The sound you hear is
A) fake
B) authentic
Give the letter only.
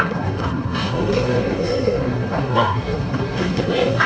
A